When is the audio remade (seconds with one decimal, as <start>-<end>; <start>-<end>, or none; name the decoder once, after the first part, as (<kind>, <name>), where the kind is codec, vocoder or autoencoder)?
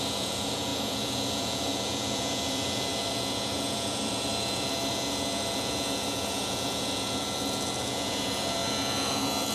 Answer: 0.0-9.5 (vocoder, Vocos)